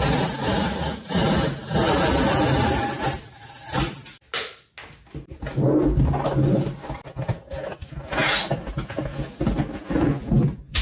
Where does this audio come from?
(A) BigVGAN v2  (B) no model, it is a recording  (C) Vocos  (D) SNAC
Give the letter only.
B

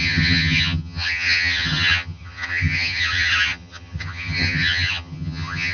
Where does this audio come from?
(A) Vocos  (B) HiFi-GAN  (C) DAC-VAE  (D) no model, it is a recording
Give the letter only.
B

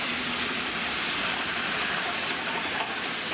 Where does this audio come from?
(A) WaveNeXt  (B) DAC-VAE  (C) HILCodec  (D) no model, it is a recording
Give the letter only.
D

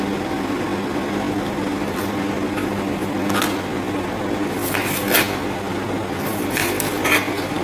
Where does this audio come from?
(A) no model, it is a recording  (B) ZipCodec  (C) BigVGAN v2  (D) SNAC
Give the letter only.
A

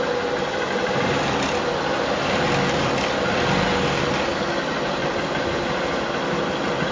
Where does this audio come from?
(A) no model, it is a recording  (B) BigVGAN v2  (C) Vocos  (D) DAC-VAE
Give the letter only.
A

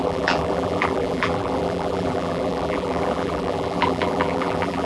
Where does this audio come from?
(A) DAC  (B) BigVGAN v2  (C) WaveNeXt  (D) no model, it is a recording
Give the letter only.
B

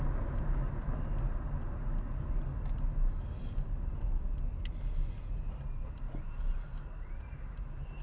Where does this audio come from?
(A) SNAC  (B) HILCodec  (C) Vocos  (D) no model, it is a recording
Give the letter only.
D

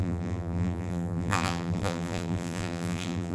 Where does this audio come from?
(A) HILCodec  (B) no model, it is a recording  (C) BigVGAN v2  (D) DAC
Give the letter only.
C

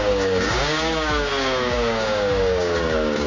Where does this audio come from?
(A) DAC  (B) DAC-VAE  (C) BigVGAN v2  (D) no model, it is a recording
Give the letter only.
A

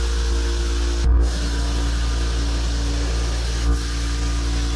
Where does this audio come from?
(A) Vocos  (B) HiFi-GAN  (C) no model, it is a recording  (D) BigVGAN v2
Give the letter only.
C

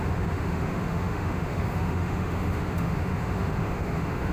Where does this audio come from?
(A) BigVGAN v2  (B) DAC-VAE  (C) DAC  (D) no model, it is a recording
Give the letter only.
B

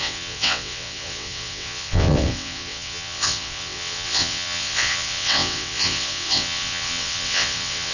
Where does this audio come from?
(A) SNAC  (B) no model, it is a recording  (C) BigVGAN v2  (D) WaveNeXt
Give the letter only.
D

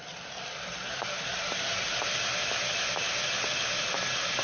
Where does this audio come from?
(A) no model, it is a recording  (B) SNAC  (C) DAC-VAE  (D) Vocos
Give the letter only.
A